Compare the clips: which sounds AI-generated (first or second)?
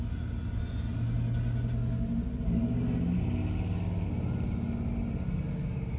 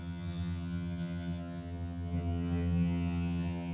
second